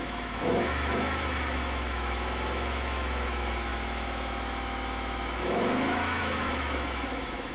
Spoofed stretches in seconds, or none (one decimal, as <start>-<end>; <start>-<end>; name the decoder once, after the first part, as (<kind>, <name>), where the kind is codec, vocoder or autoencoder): 0.0-7.5 (autoencoder, DAC-VAE)